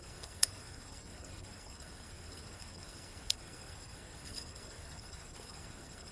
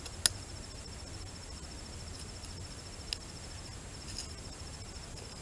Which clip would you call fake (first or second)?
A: first